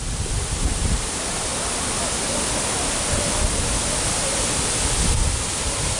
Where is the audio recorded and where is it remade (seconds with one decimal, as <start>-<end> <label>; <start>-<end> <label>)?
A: 0.0-1.5 remade; 1.5-5.1 recorded; 5.1-6.0 remade